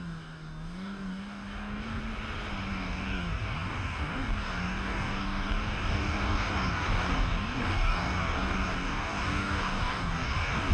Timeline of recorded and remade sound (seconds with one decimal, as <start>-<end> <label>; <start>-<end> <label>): 0.0-2.0 remade; 2.0-2.7 recorded; 2.7-10.7 remade